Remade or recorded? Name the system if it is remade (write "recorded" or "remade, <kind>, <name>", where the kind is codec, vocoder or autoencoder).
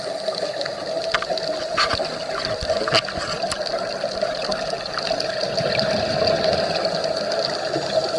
recorded